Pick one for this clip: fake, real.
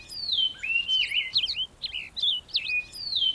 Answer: real